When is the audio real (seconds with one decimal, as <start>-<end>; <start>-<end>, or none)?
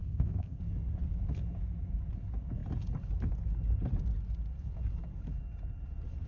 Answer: 0.6-6.3